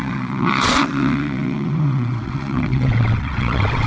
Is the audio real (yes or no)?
no